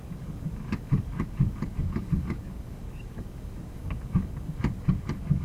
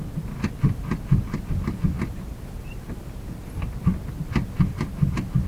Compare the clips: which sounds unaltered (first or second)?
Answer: second